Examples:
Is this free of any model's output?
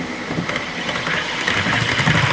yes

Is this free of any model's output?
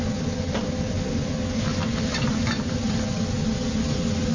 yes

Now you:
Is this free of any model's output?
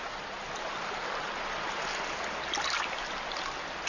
yes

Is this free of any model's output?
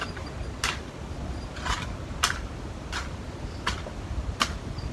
yes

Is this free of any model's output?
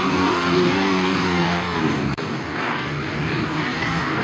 no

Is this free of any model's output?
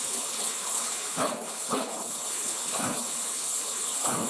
no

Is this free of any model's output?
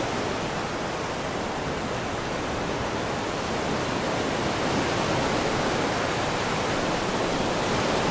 yes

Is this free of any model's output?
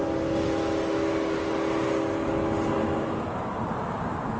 yes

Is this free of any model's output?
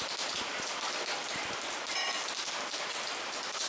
yes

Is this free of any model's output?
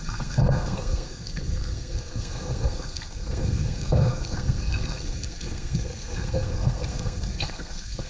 no